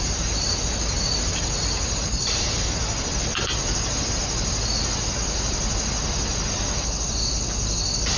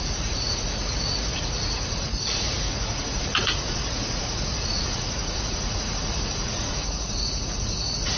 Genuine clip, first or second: first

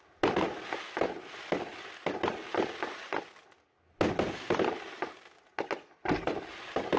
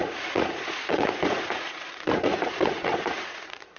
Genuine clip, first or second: first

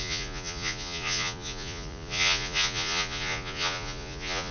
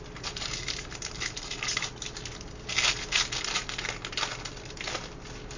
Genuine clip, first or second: second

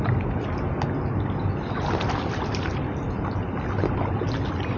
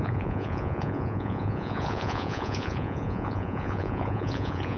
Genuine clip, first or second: first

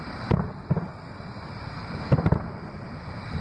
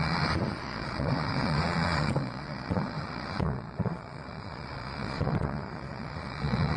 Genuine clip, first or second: first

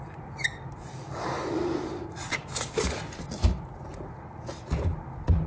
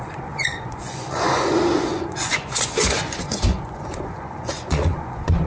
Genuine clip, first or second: first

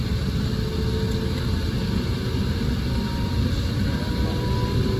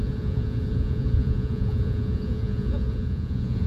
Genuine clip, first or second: first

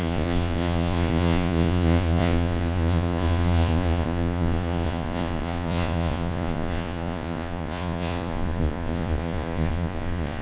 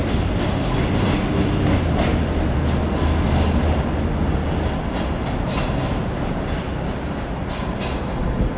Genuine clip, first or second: second